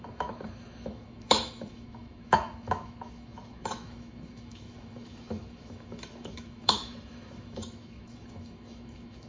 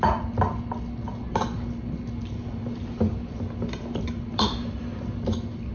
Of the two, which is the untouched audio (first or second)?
second